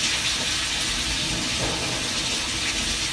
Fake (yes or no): no